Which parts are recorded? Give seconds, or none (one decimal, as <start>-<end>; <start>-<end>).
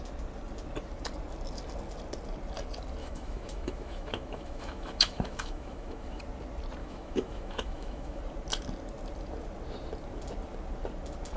0.0-3.0; 6.2-6.8; 8.2-11.4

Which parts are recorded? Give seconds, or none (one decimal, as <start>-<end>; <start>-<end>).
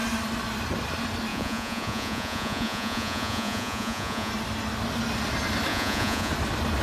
0.0-1.3; 4.3-5.7; 6.3-6.8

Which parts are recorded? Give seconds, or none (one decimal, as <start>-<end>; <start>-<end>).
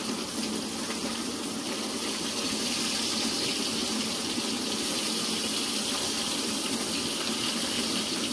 0.0-1.0; 1.8-8.3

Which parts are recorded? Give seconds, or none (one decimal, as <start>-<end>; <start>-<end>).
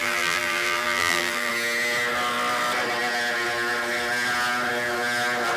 1.5-5.6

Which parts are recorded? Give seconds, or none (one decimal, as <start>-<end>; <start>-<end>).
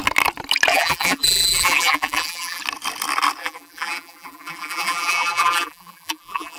0.0-0.7; 2.6-3.4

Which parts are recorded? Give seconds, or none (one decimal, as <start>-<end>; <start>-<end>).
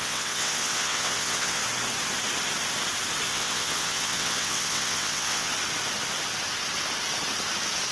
1.6-3.3; 5.5-7.9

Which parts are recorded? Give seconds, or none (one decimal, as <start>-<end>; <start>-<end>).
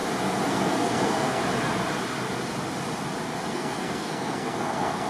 0.0-0.5; 1.4-3.5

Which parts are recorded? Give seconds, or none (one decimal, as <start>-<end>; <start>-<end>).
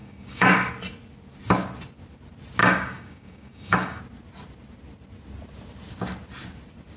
0.7-2.6; 4.0-7.0